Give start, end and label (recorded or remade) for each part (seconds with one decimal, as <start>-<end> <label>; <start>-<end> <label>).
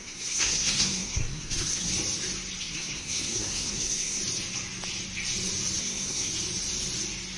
0.0-1.9 remade; 1.9-2.6 recorded; 2.6-4.2 remade; 4.2-5.8 recorded; 5.8-6.3 remade; 6.3-7.4 recorded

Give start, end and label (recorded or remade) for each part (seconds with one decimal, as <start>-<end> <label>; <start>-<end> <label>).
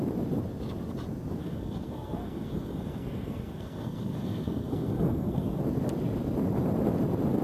0.0-1.4 recorded; 1.4-5.6 remade; 5.6-7.4 recorded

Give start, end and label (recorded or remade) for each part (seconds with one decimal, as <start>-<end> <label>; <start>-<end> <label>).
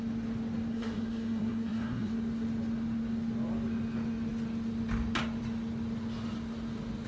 0.0-0.7 recorded; 0.7-2.1 remade; 2.1-7.1 recorded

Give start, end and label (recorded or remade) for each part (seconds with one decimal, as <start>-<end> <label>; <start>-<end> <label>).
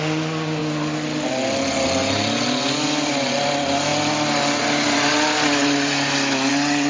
0.0-6.9 recorded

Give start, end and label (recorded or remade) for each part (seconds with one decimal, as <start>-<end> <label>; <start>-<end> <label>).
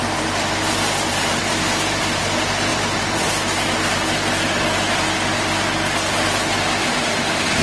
0.0-2.0 remade; 2.0-2.7 recorded; 2.7-3.3 remade; 3.3-7.6 recorded